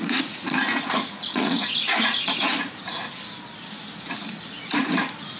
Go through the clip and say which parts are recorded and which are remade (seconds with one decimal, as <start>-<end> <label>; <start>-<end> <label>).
0.0-3.1 remade; 3.1-4.5 recorded; 4.5-5.4 remade